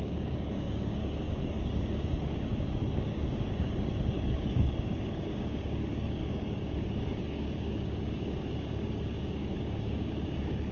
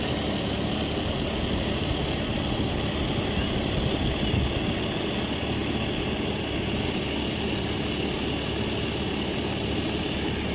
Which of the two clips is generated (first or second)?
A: first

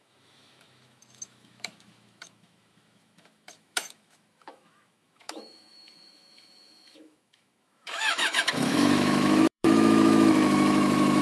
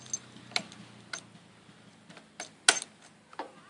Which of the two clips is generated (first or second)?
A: first